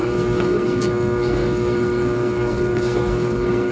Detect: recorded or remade remade